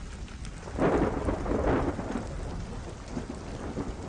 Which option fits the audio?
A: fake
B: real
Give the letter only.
B